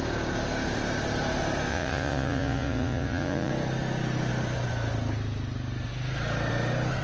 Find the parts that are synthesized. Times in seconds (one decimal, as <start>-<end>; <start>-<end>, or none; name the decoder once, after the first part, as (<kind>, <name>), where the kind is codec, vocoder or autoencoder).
1.7-3.5 (vocoder, Vocos)